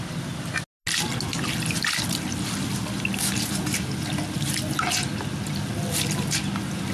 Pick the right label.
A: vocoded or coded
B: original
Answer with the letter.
B